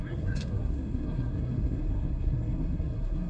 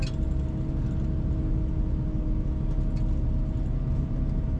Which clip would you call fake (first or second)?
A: first